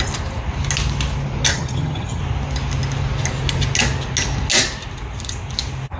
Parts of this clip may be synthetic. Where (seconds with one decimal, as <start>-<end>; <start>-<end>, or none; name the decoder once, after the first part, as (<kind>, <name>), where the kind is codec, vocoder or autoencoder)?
1.5-2.2 (vocoder, HiFi-GAN)